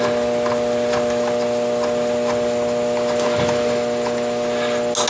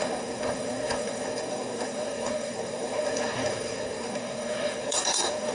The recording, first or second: first